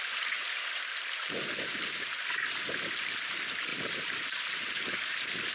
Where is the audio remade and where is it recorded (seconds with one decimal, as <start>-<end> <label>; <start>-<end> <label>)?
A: 0.0-5.5 recorded

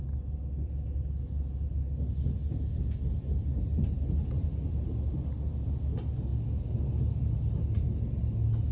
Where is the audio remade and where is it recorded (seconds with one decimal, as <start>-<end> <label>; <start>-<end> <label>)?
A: 0.0-8.7 recorded